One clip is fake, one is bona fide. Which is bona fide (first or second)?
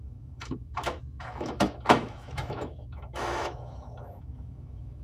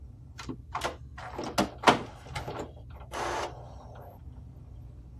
second